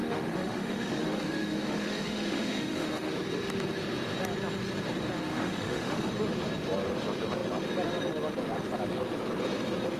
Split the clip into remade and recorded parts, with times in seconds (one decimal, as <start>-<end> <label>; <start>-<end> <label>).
0.0-3.1 remade; 3.1-5.3 recorded; 5.3-6.1 remade; 6.1-10.0 recorded